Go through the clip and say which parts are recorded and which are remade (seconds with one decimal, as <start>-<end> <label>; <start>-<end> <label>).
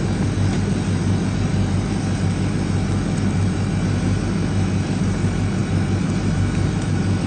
0.0-7.3 recorded